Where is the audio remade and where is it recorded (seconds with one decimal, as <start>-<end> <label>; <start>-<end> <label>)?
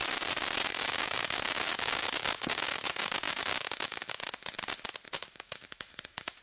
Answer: 0.0-0.7 recorded; 0.7-4.2 remade; 4.2-5.2 recorded; 5.2-6.4 remade